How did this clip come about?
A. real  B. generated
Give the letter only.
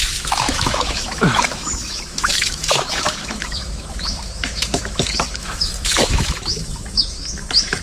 B